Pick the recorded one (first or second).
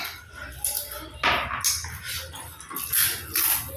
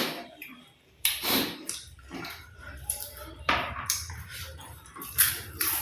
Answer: first